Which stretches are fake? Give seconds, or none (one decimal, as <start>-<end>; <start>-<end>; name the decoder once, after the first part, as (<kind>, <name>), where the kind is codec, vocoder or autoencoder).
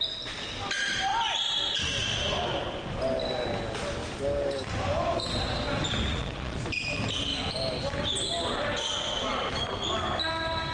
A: 6.1-6.6 (vocoder, Vocos)